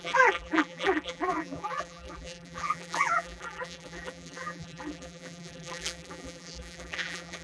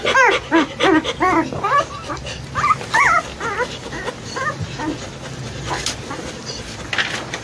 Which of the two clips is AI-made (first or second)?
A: first